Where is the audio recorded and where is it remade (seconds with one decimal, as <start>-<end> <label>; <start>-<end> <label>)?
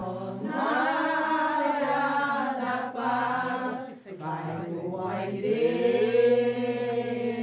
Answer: 0.0-7.4 recorded